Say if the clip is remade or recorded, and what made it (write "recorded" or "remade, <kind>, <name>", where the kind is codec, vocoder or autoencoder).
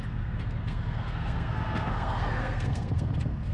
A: remade, codec, SNAC